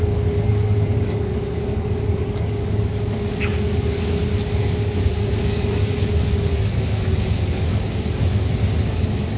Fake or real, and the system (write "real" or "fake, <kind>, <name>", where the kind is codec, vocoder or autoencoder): fake, codec, DAC